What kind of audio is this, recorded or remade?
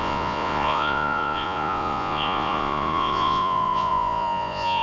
remade